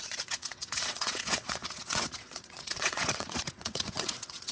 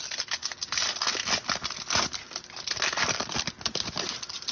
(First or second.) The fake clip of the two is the first